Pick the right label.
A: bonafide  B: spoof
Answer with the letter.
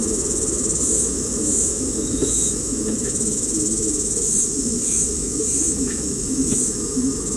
B